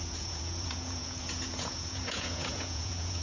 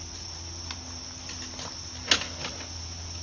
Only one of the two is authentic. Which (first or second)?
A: second